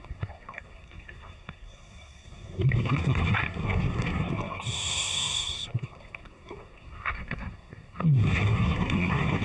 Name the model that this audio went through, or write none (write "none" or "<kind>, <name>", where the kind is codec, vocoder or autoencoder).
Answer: codec, SNAC